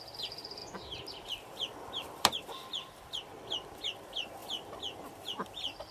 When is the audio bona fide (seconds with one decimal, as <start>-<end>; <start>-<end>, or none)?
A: 0.6-1.4